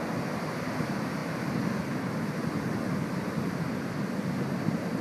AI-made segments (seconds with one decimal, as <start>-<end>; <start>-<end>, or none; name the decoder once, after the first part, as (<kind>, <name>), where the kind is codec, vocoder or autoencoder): none